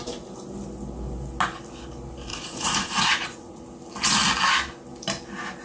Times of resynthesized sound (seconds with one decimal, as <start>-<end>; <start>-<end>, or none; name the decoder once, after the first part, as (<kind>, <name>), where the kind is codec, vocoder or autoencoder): 2.3-3.6 (vocoder, Vocos)